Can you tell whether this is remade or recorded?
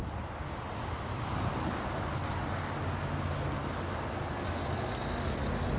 recorded